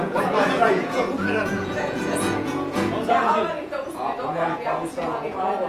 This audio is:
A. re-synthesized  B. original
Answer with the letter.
A